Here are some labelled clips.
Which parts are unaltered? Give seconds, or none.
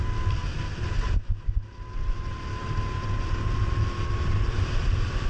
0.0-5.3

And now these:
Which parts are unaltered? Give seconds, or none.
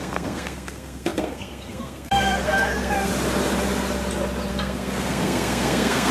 3.1-4.5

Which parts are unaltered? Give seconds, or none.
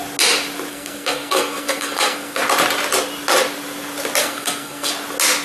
0.0-0.7; 2.4-4.2; 4.9-5.4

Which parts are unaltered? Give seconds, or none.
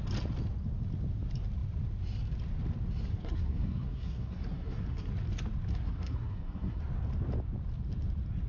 0.0-3.1; 5.1-5.7; 6.8-8.5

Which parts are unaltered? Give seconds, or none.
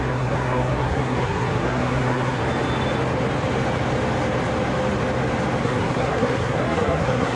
2.4-5.6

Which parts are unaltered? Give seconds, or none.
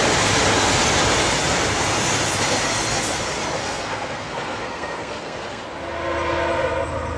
0.0-3.6; 5.6-7.2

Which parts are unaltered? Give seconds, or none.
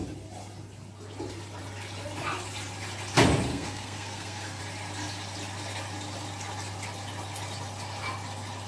0.0-3.5; 4.6-8.7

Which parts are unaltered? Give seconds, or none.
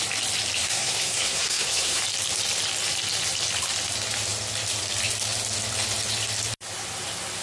0.0-0.6; 2.0-7.4